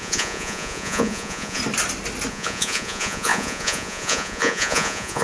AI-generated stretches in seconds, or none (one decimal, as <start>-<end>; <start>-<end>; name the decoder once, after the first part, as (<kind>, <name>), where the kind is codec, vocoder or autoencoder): 0.0-1.6 (vocoder, Vocos); 2.3-5.2